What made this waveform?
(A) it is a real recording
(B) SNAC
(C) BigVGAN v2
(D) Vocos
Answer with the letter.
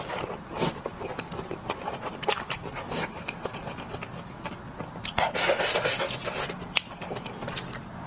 A